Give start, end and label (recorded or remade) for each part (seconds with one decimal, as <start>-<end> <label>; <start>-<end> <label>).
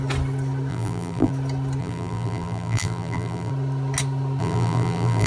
0.0-0.7 recorded; 0.7-1.3 remade; 1.3-1.8 recorded; 1.8-3.5 remade; 3.5-4.4 recorded; 4.4-5.3 remade